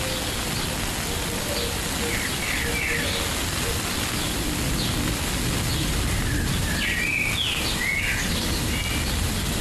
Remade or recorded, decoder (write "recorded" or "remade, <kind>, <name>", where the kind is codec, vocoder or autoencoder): recorded